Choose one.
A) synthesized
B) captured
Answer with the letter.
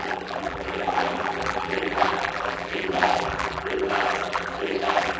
A